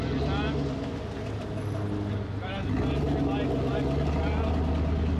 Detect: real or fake real